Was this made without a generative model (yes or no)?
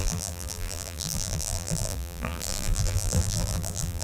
no